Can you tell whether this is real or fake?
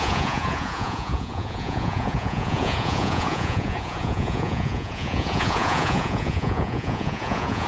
fake